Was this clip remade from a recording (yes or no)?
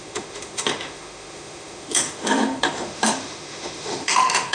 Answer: yes